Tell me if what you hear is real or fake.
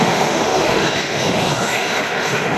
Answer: fake